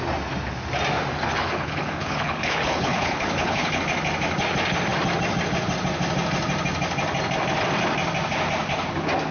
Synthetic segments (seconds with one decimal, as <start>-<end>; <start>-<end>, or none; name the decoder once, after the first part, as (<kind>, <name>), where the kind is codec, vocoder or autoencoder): 1.3-3.8 (codec, HILCodec)